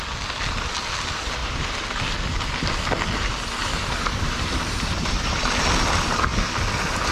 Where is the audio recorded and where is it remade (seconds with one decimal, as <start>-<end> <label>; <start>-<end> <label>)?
0.0-1.4 recorded; 1.4-2.0 remade; 2.0-3.6 recorded; 3.6-5.4 remade; 5.4-7.1 recorded